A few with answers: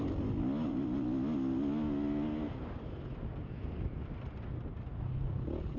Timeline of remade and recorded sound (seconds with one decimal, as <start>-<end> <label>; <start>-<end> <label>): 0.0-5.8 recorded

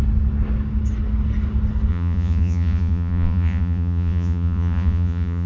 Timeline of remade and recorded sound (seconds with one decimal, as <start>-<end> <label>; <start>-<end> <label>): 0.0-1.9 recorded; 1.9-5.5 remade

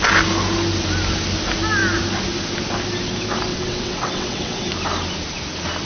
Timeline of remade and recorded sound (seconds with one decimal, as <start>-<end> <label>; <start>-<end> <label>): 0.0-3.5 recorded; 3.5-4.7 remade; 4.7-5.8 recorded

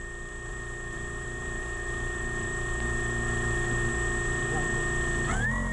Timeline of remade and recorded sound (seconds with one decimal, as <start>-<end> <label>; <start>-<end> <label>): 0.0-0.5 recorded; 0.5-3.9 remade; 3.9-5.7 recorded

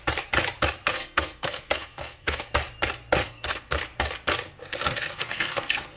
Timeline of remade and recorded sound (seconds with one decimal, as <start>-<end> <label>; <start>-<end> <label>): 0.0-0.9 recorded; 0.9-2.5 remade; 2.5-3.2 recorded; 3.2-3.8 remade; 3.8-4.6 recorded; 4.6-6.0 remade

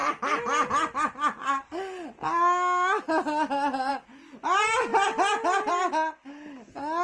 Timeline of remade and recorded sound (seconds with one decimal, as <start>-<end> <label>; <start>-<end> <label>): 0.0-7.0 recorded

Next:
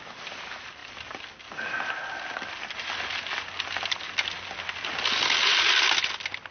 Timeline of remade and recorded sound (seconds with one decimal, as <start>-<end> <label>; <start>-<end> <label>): 0.0-6.5 recorded

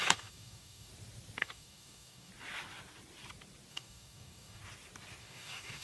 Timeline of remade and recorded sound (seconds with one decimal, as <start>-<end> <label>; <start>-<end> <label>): 0.0-0.9 remade; 0.9-1.4 recorded; 1.4-2.3 remade; 2.3-3.7 recorded; 3.7-4.6 remade; 4.6-5.2 recorded; 5.2-5.8 remade